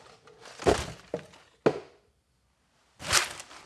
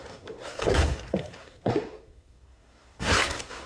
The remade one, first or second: second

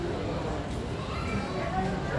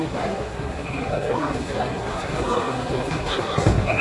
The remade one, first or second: second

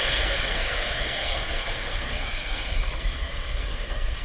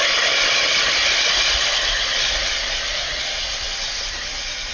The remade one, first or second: first